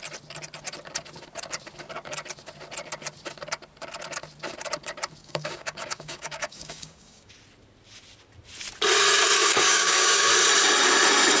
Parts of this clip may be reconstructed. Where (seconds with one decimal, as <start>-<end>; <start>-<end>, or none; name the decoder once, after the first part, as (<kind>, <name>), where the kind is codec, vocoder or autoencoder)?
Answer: 5.2-7.3 (codec, DAC); 9.4-10.3

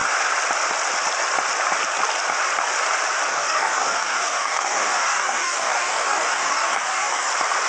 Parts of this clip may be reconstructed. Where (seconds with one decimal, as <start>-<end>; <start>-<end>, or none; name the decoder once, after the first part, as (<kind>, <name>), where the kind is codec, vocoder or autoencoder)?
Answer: 3.3-7.3 (codec, DAC)

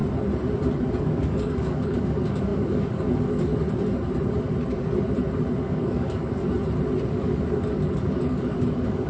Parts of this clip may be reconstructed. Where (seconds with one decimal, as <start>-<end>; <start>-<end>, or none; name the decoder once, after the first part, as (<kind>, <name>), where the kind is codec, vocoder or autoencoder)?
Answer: 1.0-3.5 (codec, DAC); 5.6-6.4; 7.1-9.1

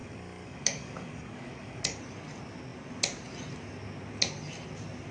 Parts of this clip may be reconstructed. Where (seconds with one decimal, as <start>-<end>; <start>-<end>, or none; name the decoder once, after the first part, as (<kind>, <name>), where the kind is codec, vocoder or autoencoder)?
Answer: 0.0-2.0 (codec, DAC)

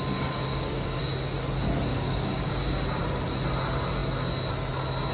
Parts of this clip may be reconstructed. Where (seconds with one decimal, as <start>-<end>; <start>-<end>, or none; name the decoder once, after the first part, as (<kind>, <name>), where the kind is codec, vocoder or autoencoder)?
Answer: 0.4-1.0 (codec, DAC); 1.9-2.5